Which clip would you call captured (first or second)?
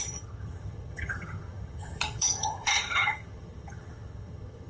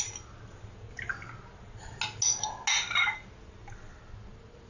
second